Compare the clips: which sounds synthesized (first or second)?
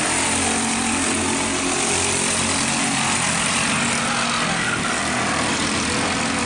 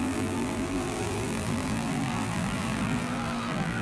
second